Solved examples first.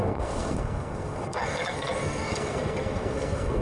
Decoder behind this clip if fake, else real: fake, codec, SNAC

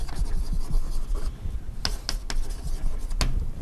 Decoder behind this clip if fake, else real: real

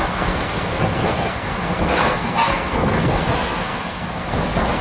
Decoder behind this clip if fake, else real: fake, codec, SNAC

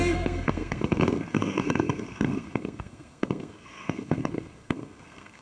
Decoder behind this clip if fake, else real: fake, codec, SNAC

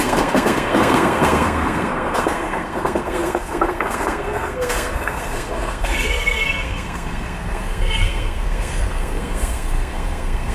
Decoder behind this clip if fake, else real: fake, codec, SNAC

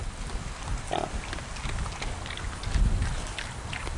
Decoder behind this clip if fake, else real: real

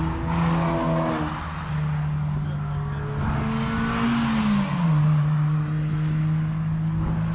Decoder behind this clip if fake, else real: real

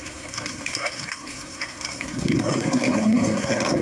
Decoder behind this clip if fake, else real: fake, codec, SNAC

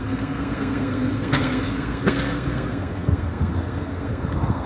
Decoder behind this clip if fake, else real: fake, codec, SNAC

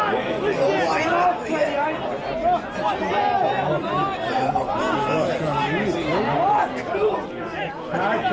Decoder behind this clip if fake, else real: real